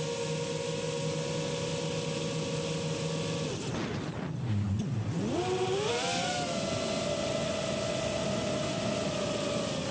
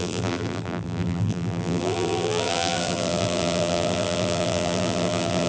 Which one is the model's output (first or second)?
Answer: second